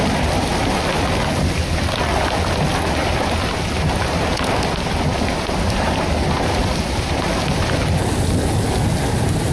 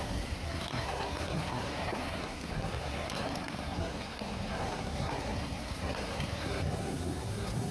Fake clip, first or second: second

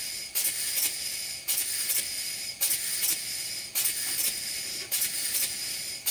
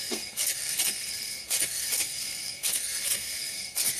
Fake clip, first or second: second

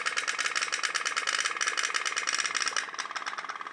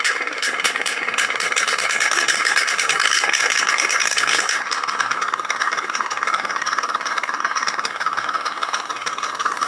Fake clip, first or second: second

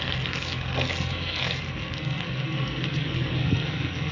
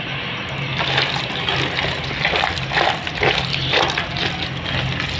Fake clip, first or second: first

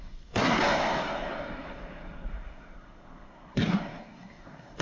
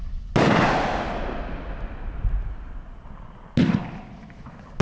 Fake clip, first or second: first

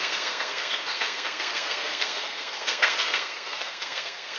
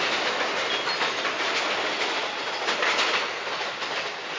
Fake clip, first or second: first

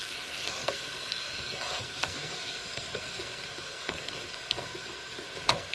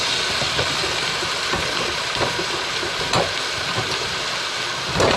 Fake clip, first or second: first